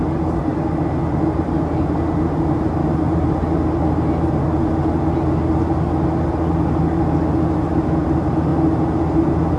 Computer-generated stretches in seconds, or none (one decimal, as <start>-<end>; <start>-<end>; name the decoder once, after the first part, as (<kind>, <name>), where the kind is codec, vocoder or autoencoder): none

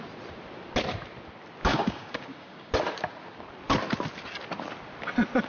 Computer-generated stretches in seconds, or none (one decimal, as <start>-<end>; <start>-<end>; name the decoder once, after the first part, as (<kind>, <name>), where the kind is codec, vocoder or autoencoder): 1.7-2.7 (codec, DAC)

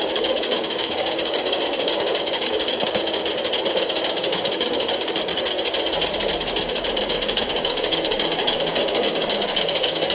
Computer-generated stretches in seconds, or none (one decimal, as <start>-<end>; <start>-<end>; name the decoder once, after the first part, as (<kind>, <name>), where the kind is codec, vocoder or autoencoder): 0.0-3.2 (codec, DAC); 3.7-5.3; 7.0-10.1

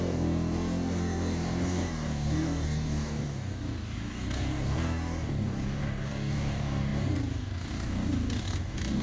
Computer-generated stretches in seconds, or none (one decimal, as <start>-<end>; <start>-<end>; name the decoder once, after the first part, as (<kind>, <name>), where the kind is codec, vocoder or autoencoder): 0.0-9.0 (codec, DAC)

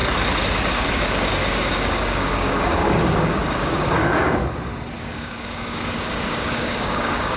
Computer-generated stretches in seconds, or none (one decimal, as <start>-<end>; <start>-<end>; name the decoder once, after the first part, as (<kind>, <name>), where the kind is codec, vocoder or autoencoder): 0.9-4.4 (codec, DAC); 5.0-7.4